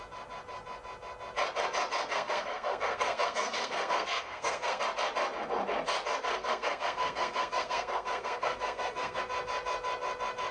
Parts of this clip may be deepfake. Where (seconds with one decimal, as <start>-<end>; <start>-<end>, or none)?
2.1-4.8; 6.3-9.2